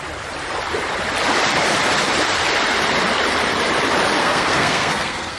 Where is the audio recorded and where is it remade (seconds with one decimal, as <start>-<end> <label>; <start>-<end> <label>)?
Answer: 0.0-4.2 recorded; 4.2-5.4 remade